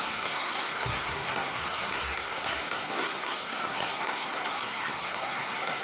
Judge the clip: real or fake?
fake